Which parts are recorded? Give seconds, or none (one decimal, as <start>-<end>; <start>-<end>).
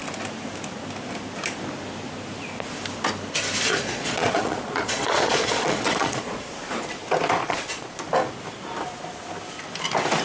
0.0-3.7; 6.4-7.4; 8.0-10.2